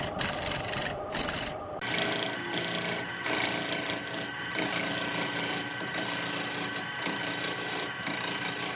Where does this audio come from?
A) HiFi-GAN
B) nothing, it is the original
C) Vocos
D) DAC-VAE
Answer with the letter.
B